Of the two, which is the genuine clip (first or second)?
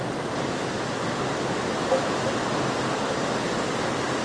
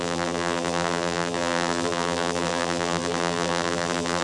first